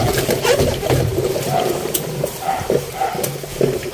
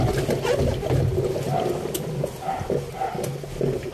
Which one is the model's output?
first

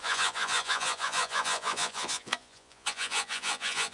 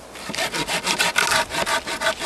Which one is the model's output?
first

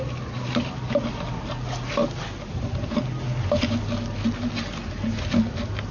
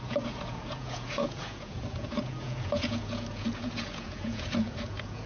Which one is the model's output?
second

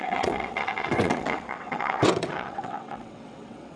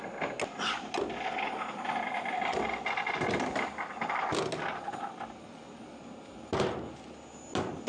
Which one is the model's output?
first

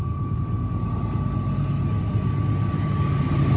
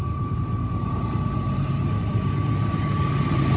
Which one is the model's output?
second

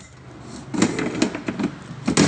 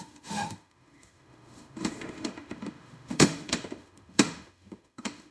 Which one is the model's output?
second